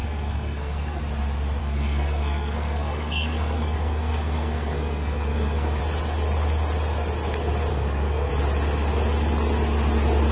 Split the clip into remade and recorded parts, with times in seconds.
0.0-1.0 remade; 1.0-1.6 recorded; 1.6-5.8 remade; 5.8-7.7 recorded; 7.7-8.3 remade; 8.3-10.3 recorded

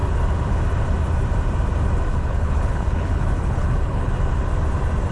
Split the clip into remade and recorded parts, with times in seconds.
0.0-2.1 recorded; 2.1-4.1 remade; 4.1-5.1 recorded

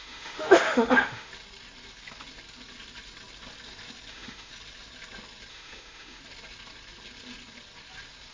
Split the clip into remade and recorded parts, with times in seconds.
0.0-1.3 remade; 1.3-4.1 recorded; 4.1-4.5 remade; 4.5-5.5 recorded; 5.5-6.2 remade; 6.2-8.3 recorded

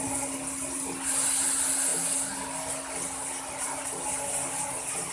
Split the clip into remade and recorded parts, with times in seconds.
0.0-5.1 recorded

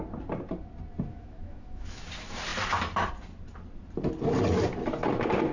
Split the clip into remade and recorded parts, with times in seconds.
0.0-1.1 recorded; 1.1-2.1 remade; 2.1-5.5 recorded

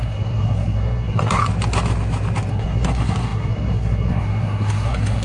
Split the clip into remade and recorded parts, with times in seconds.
0.0-1.4 remade; 1.4-2.5 recorded; 2.5-5.2 remade